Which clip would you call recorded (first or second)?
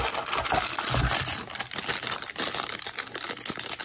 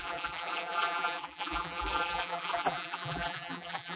first